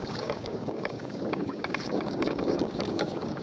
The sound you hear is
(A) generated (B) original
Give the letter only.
A